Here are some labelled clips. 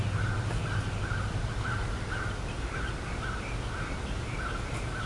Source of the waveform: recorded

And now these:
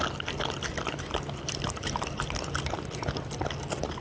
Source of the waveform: recorded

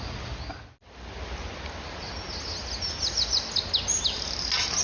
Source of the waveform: recorded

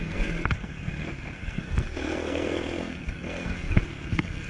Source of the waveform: remade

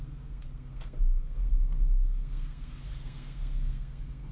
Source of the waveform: remade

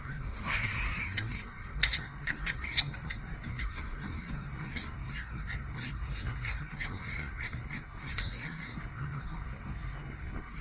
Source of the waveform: remade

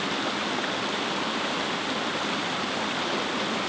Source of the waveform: recorded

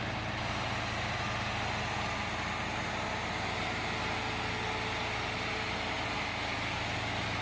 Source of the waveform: recorded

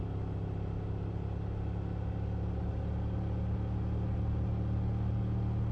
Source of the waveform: recorded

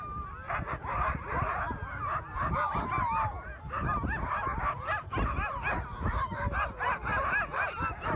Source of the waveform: recorded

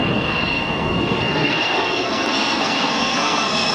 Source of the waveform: remade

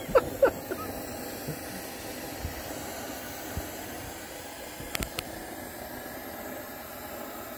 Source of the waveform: recorded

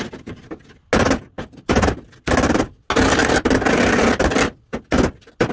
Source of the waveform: recorded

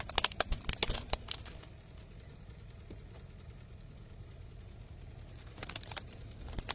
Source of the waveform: recorded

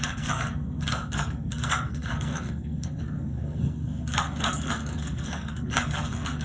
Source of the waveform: remade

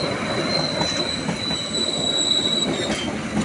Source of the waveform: recorded